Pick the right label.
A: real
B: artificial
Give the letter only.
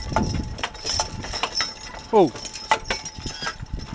A